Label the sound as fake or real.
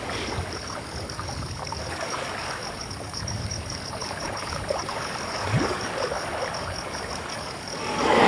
fake